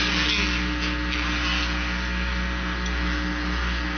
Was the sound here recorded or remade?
recorded